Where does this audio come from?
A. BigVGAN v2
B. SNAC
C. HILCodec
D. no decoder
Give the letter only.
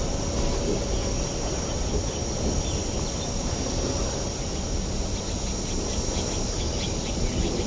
D